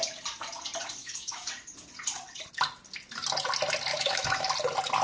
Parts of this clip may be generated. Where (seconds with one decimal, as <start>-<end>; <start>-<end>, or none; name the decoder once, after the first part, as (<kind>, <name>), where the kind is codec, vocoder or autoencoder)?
1.0-1.5 (autoencoder, DAC-VAE); 3.9-4.5